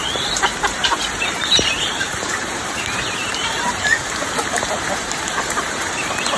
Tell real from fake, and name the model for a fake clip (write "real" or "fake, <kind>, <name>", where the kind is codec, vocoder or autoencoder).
fake, vocoder, BigVGAN v2